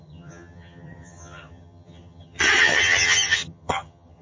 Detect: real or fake fake